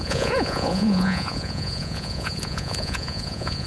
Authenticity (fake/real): fake